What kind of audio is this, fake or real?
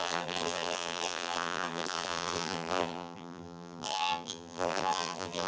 fake